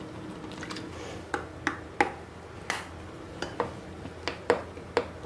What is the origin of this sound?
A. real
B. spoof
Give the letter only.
A